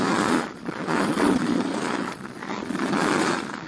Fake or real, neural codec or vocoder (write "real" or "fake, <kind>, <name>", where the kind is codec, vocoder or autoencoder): fake, vocoder, Vocos